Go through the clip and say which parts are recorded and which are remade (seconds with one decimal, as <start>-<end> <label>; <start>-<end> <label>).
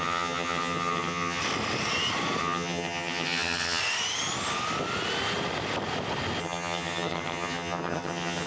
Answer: 0.0-1.4 remade; 1.4-2.4 recorded; 2.4-3.8 remade; 3.8-6.4 recorded; 6.4-8.5 remade